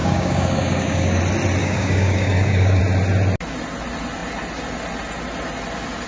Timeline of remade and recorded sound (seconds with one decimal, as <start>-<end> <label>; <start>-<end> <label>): 0.0-1.2 remade; 1.2-1.6 recorded; 1.6-2.8 remade; 2.8-6.1 recorded